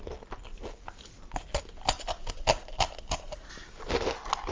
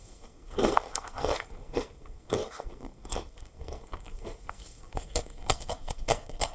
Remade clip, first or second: second